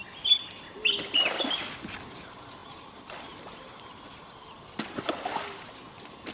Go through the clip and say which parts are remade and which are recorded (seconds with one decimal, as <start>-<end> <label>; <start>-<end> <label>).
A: 0.0-6.3 remade